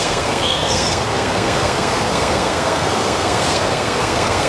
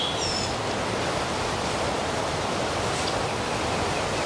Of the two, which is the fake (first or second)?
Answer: first